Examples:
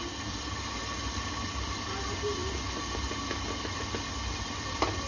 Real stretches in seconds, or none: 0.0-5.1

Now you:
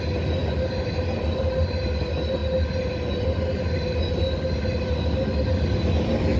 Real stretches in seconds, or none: 0.0-6.4

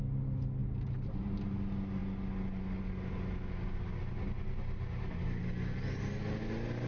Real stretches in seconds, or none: 0.0-6.9

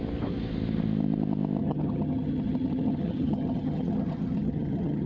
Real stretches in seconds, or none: 0.0-1.6

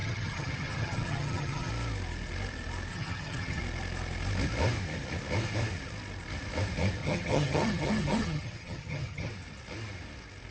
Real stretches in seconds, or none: 1.7-2.9; 3.6-7.0; 9.3-10.5

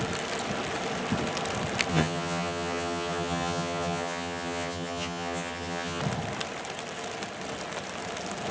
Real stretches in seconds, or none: 0.0-1.9; 6.0-8.5

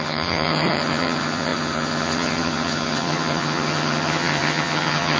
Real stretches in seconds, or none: none